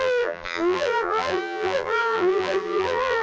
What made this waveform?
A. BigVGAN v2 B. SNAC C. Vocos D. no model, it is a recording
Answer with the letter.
A